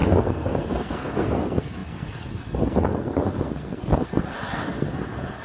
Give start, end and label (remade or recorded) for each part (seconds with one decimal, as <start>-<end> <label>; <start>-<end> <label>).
0.0-5.4 remade